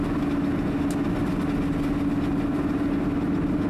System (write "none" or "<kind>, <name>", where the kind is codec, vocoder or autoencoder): none